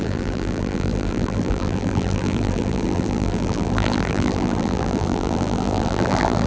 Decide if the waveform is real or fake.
fake